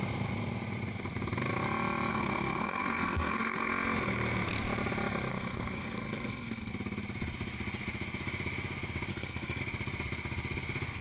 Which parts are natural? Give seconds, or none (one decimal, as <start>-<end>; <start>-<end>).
0.0-2.1; 3.7-5.3; 6.7-9.1; 9.6-11.0